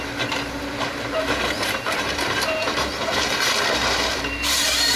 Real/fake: fake